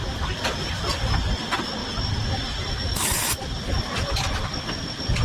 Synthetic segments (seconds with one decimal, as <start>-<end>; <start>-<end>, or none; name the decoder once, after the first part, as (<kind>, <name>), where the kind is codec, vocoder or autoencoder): none